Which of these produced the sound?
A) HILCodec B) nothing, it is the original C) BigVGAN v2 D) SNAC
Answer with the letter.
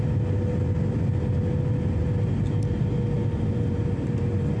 B